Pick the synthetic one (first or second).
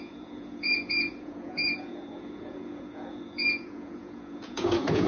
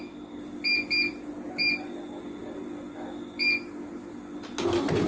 first